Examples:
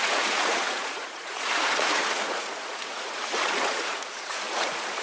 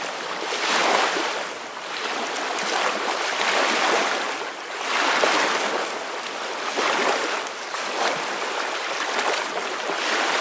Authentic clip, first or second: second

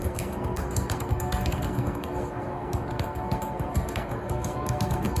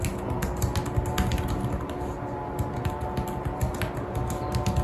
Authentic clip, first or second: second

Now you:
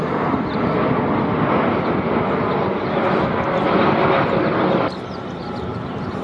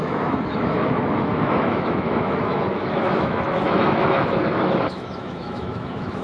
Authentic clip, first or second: first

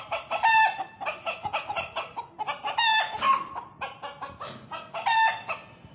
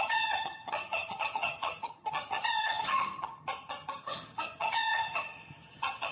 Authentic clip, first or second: first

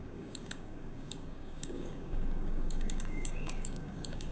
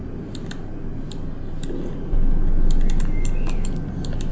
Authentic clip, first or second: second